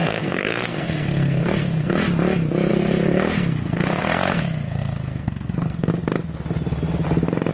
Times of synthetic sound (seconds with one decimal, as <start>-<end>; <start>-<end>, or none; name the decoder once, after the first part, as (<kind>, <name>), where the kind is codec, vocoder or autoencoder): 0.0-2.0 (codec, SNAC); 2.7-5.9